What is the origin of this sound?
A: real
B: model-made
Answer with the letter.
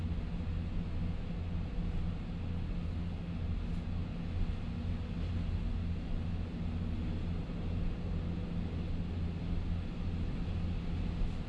A